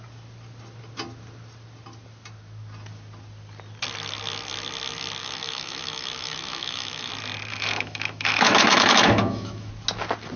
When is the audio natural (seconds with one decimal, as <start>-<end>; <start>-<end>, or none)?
0.0-5.2; 7.1-7.5; 9.7-10.4